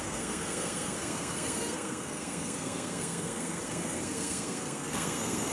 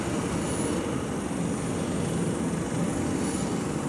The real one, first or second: second